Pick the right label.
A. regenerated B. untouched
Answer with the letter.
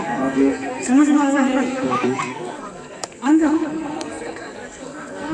A